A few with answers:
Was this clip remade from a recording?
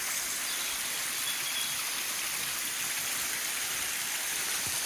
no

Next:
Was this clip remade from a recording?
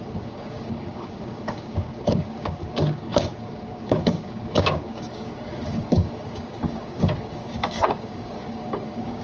yes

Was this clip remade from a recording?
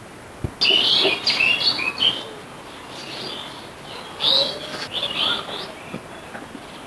no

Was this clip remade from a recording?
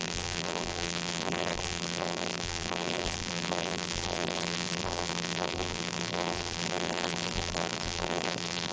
yes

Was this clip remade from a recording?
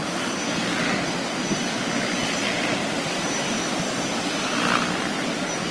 no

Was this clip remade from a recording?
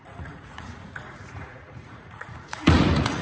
yes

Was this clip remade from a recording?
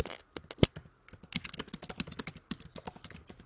no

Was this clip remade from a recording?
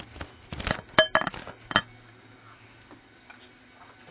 no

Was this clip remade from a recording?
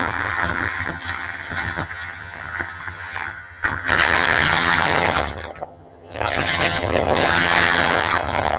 yes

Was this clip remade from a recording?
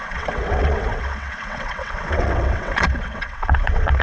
yes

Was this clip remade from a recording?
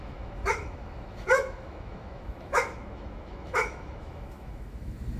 yes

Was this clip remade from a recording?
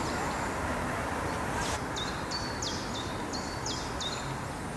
no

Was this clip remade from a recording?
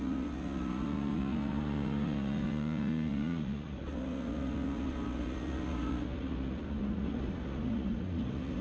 yes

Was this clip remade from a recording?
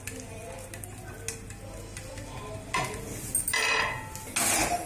no